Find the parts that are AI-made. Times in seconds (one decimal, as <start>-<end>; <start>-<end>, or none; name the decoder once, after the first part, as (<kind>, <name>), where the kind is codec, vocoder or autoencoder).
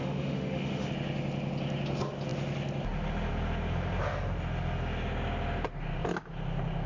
0.0-0.9 (autoencoder, DAC-VAE)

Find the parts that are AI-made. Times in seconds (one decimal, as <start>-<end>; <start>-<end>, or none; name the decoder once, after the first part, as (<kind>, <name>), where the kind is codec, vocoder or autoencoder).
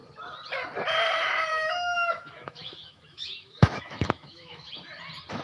1.5-4.7 (autoencoder, DAC-VAE)